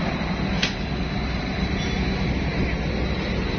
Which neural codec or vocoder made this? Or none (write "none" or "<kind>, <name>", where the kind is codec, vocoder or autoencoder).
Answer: none